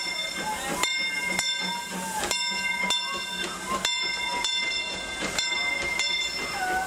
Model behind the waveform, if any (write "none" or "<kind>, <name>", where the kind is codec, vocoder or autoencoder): none